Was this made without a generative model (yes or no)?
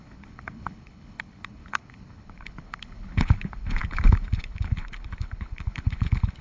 no